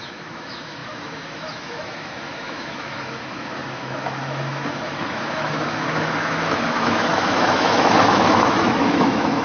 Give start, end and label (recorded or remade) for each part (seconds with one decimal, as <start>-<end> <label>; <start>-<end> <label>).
0.0-9.4 remade